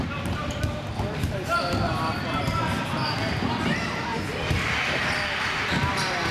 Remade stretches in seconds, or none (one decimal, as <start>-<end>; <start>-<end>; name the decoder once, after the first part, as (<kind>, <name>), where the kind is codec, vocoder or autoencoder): none

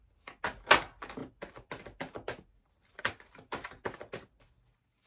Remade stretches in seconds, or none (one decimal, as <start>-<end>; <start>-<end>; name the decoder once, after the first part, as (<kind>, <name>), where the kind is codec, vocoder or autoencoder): none

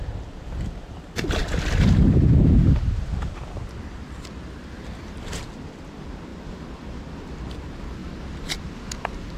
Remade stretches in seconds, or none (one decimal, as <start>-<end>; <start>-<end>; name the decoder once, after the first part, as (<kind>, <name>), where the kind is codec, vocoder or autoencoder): 8.0-9.0 (vocoder, BigVGAN v2)

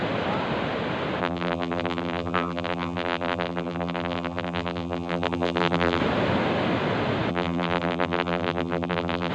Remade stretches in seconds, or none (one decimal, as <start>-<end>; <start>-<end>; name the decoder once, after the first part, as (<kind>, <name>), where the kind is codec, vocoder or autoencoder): 1.2-6.0 (vocoder, BigVGAN v2); 7.3-9.3

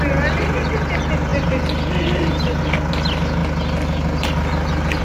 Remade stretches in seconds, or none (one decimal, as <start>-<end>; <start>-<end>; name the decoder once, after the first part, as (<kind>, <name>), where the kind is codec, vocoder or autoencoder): none

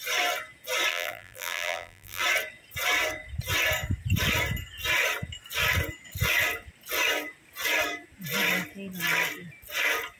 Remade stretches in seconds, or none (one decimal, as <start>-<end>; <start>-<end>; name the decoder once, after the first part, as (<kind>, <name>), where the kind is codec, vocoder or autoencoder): 0.9-2.2 (vocoder, BigVGAN v2)